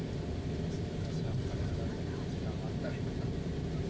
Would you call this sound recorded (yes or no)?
yes